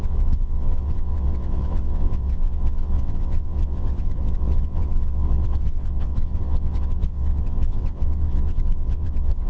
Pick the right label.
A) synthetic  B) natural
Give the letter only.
A